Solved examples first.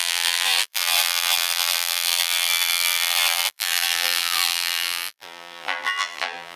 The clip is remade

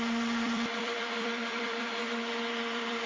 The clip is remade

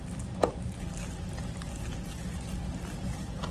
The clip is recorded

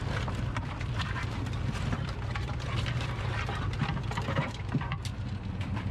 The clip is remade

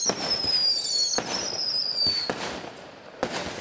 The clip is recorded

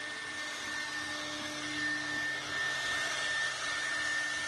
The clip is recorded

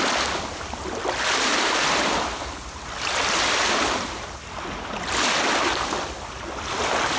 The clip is recorded